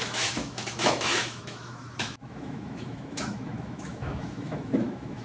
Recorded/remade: remade